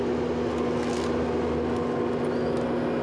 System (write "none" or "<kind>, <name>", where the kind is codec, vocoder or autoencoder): none